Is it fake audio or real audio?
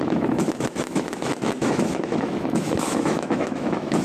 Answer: fake